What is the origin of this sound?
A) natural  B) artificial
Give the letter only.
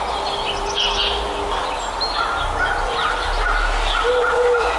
A